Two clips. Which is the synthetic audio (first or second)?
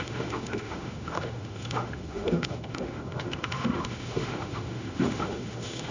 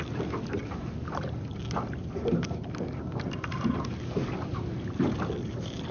first